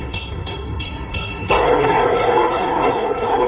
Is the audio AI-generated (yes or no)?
yes